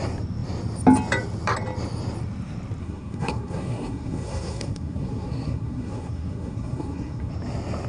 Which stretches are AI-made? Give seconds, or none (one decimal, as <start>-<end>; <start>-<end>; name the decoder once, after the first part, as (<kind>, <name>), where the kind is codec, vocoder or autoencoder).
2.8-7.3 (codec, SNAC)